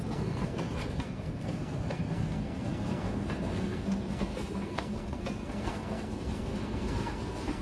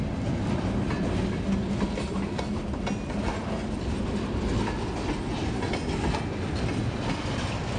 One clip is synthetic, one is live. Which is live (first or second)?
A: second